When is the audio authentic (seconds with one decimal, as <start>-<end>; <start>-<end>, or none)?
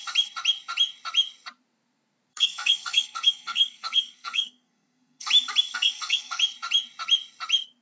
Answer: 0.0-2.3; 5.3-5.7; 6.4-7.8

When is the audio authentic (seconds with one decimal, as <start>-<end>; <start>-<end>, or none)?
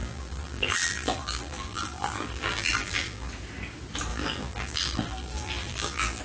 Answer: 3.3-4.1